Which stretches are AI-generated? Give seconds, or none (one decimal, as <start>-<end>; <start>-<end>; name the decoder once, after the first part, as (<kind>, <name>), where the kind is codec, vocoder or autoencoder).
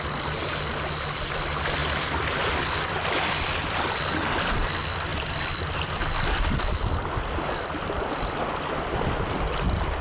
1.8-4.0 (vocoder, BigVGAN v2); 5.1-8.5